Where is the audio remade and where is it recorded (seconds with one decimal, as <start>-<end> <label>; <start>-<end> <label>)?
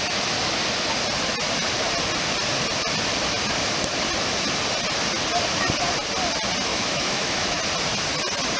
0.0-6.7 recorded; 6.7-7.6 remade; 7.6-8.6 recorded